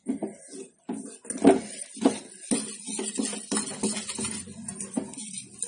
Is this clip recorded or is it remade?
recorded